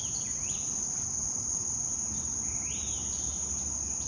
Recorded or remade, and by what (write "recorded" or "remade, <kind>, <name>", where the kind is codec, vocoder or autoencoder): recorded